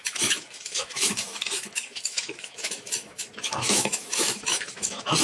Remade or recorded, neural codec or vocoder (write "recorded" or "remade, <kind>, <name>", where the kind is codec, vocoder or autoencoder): remade, autoencoder, DAC-VAE